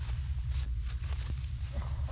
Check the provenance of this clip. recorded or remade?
remade